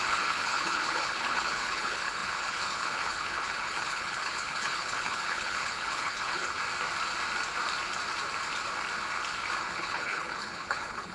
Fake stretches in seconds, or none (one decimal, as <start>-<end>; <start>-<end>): 0.0-6.6; 9.6-11.1